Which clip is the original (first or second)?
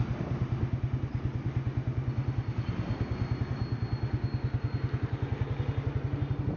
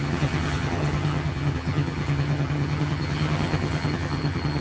first